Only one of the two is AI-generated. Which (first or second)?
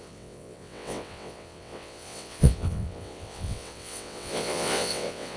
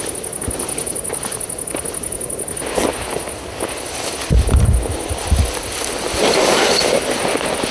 first